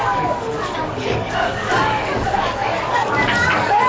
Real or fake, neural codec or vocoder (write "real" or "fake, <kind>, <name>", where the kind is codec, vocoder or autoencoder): fake, codec, DAC